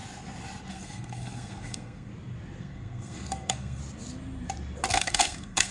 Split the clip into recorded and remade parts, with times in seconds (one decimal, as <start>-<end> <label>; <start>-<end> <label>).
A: 0.0-0.7 recorded; 0.7-2.1 remade; 2.1-2.6 recorded; 2.6-3.8 remade; 3.8-4.9 recorded; 4.9-5.7 remade